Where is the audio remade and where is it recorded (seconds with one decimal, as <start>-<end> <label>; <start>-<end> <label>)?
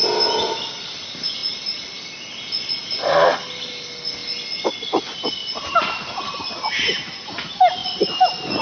0.0-5.4 recorded; 5.4-6.4 remade; 6.4-8.6 recorded